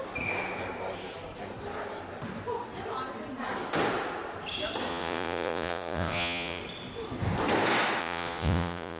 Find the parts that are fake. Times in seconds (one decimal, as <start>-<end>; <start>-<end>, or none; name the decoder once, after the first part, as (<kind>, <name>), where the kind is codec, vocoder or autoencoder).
4.9-6.6 (vocoder, Vocos); 8.0-9.0